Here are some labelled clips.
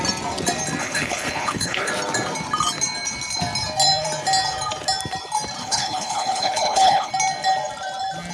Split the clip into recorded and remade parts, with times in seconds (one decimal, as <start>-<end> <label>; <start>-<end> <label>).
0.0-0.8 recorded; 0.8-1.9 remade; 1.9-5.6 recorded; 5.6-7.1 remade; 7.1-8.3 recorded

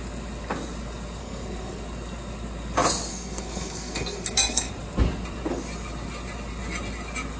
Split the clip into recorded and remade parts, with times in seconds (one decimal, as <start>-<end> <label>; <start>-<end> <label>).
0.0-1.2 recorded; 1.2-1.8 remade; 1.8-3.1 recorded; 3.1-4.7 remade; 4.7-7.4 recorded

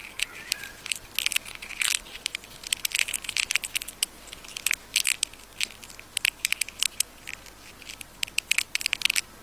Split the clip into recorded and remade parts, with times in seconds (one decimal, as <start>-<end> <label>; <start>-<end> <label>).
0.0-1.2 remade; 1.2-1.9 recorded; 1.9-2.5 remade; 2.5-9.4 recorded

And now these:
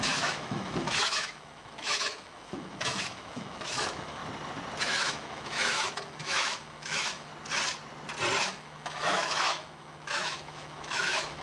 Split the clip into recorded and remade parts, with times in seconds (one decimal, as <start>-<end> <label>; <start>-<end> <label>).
0.0-4.2 remade; 4.2-4.8 recorded; 4.8-7.3 remade; 7.3-8.4 recorded; 8.4-11.4 remade

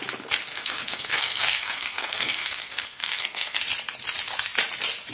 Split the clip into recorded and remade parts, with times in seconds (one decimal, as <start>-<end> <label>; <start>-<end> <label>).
0.0-0.5 recorded; 0.5-3.6 remade; 3.6-5.1 recorded